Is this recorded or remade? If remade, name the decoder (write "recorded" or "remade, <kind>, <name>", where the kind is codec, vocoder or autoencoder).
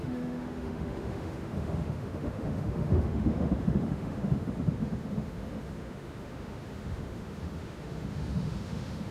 remade, autoencoder, DAC-VAE